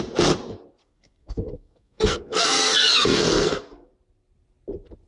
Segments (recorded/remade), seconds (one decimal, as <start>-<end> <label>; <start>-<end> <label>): 0.0-0.8 recorded; 0.8-3.9 remade; 3.9-5.1 recorded

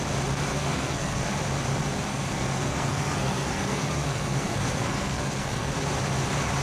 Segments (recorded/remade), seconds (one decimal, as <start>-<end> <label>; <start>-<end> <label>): 0.0-0.5 recorded; 0.5-1.4 remade; 1.4-2.1 recorded; 2.1-5.7 remade; 5.7-6.6 recorded

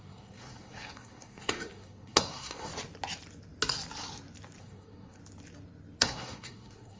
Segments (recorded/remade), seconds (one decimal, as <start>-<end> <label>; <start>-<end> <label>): 0.0-2.7 remade; 2.7-4.6 recorded; 4.6-5.2 remade; 5.2-6.0 recorded; 6.0-7.0 remade

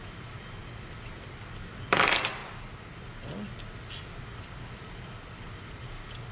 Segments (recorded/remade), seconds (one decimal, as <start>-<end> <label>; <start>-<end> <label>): 0.0-6.3 recorded

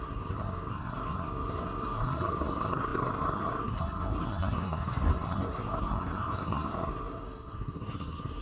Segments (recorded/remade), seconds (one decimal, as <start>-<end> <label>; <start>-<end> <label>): 0.0-8.4 remade

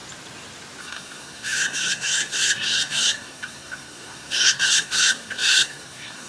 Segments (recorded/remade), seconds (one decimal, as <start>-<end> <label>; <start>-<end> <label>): 0.0-0.8 recorded; 0.8-6.3 remade

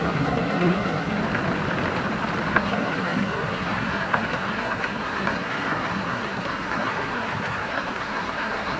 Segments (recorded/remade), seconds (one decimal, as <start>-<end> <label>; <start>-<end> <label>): 0.0-1.2 remade; 1.2-2.5 recorded; 2.5-8.8 remade

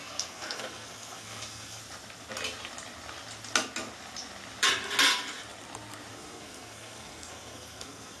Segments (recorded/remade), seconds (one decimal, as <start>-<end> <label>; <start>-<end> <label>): 0.0-1.8 remade; 1.8-6.1 recorded; 6.1-8.2 remade